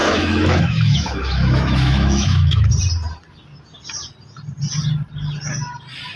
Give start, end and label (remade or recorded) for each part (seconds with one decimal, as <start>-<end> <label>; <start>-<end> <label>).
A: 0.0-2.7 remade; 2.7-6.2 recorded